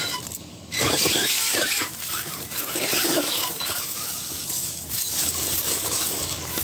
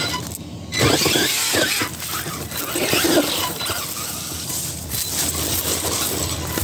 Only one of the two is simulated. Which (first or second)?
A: first